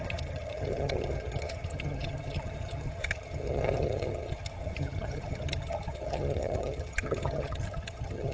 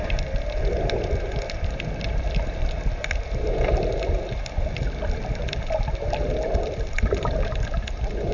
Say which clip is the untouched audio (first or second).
second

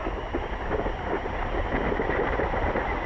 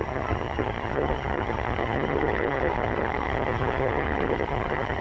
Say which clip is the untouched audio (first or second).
first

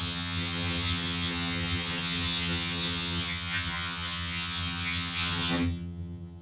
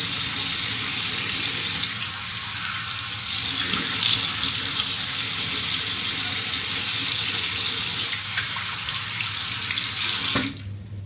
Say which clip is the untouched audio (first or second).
second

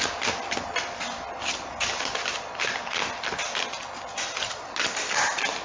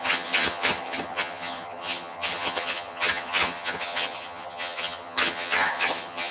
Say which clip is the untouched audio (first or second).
first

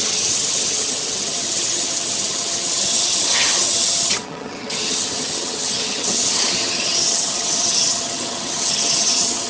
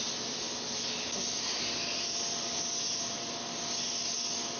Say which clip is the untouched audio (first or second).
second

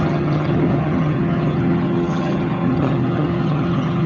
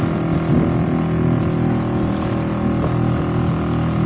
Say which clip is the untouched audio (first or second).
second